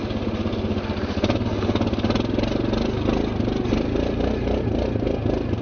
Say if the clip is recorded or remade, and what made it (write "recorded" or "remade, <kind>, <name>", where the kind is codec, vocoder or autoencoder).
recorded